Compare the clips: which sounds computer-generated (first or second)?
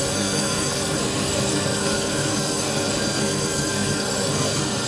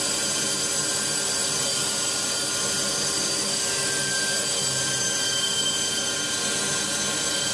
first